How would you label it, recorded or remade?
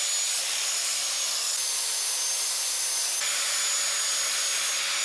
recorded